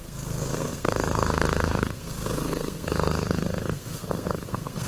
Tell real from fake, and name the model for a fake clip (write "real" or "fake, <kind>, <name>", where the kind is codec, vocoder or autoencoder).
fake, codec, SNAC